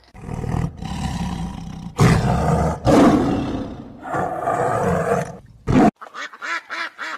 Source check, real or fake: real